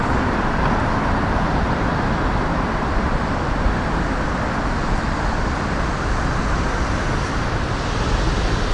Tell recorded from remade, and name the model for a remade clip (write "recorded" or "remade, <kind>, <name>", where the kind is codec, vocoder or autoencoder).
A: remade, vocoder, BigVGAN v2